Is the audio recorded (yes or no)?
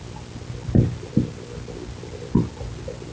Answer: yes